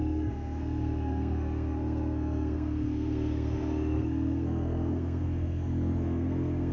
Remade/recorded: remade